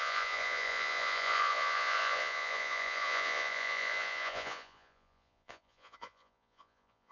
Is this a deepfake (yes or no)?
yes